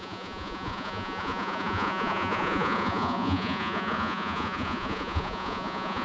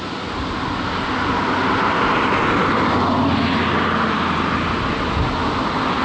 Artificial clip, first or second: first